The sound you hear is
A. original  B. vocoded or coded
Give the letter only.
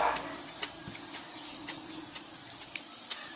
A